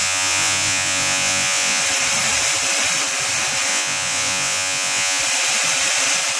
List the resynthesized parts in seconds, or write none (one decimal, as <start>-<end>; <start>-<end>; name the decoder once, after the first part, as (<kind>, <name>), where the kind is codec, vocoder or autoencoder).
0.0-1.8 (vocoder, Vocos); 3.7-5.2